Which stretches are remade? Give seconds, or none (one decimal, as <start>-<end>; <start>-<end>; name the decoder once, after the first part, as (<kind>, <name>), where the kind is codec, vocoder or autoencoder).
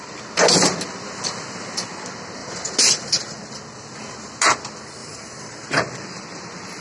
2.4-3.5 (vocoder, BigVGAN v2); 5.0-6.8